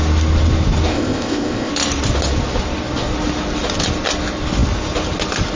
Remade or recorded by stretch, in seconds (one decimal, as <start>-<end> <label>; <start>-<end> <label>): 0.0-0.9 recorded; 0.9-1.7 remade; 1.7-5.6 recorded